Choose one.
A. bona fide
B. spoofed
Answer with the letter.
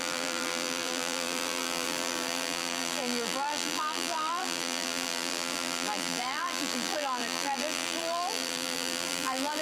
B